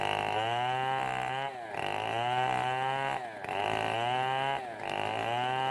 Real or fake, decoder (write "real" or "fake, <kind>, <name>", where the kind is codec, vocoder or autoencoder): real